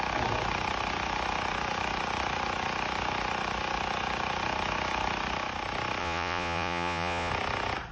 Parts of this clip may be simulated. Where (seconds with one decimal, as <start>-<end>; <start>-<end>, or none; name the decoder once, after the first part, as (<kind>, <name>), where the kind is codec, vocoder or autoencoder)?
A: 6.0-7.3 (vocoder, Vocos)